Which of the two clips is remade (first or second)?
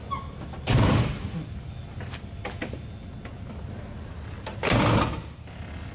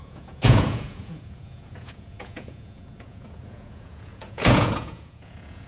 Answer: second